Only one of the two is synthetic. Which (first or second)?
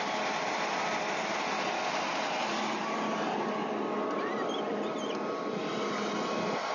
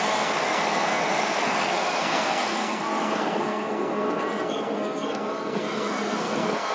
second